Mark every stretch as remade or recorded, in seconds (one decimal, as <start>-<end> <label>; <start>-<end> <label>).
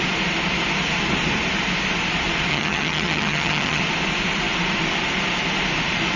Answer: 0.0-2.5 recorded; 2.5-3.8 remade; 3.8-6.2 recorded